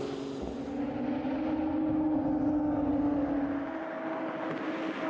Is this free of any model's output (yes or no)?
yes